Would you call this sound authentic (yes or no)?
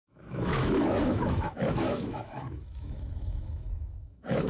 no